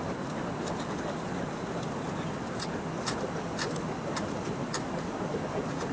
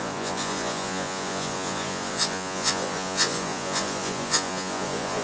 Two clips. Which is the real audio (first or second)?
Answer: first